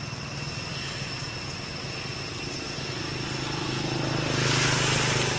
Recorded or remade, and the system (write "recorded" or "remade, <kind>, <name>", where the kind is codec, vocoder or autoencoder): recorded